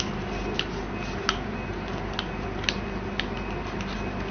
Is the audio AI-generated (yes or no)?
no